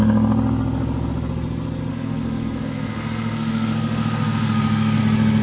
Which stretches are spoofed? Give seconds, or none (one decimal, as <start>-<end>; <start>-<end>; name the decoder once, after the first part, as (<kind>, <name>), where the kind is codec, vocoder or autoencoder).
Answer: 1.9-5.0 (codec, SNAC)